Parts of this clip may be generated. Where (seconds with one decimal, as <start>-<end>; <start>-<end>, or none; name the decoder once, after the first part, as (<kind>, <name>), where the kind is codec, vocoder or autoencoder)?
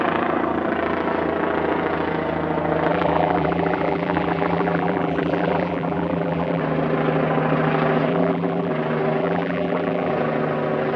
2.9-6.6 (vocoder, BigVGAN v2); 8.1-8.7; 9.2-10.1